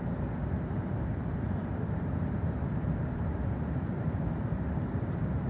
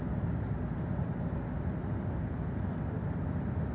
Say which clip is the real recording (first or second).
second